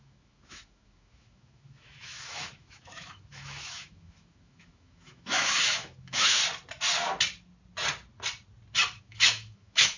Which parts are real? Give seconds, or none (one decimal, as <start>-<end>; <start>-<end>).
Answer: 6.4-9.0